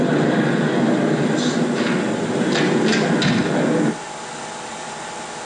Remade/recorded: recorded